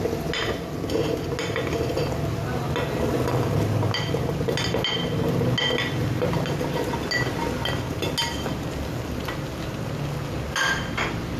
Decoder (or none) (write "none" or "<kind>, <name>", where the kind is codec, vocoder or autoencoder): none